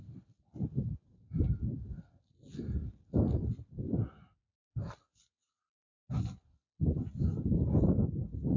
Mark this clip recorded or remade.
recorded